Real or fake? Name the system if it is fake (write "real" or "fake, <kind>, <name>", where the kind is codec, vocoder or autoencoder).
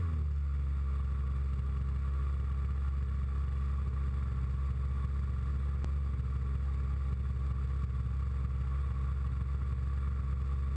real